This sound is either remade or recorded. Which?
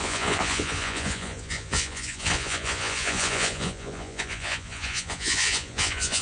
remade